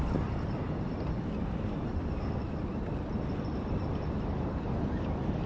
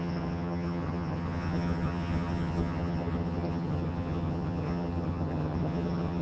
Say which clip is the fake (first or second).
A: second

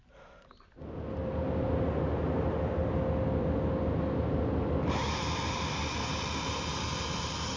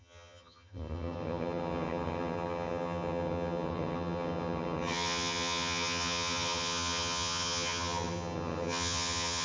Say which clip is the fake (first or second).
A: second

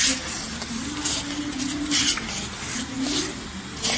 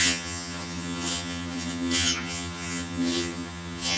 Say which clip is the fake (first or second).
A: second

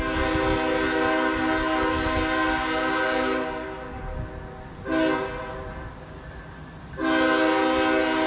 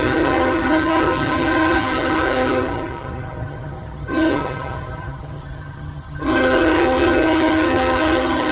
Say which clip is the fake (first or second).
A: second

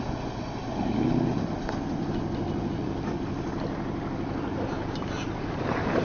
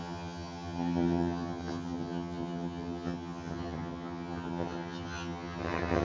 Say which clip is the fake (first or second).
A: second